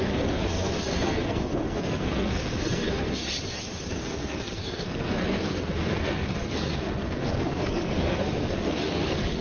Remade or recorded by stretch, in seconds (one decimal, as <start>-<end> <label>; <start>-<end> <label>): 0.0-3.2 remade; 3.2-3.9 recorded; 3.9-9.4 remade